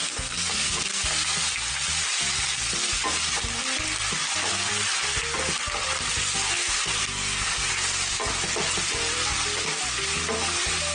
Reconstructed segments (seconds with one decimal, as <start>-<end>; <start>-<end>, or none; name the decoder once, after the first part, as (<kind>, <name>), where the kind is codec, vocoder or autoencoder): 0.0-1.4 (codec, SNAC); 7.0-7.7